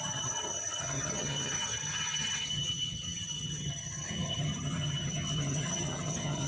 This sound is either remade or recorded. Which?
remade